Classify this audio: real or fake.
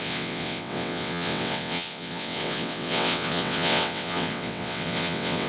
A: fake